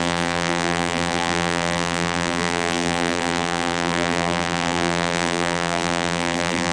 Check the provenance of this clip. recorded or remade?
remade